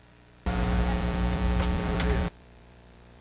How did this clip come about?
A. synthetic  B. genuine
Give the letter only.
A